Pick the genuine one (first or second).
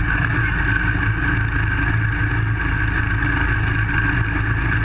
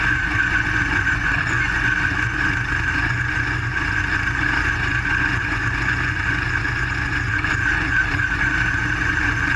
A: first